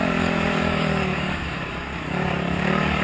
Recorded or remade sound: remade